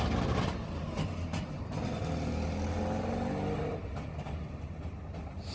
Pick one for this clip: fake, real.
real